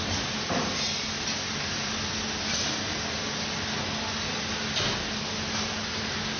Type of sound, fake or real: real